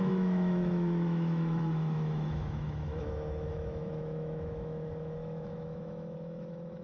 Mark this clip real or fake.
fake